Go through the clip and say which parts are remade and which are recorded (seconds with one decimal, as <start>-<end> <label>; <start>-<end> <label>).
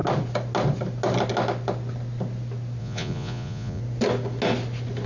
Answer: 0.0-2.8 recorded; 2.8-3.8 remade; 3.8-5.1 recorded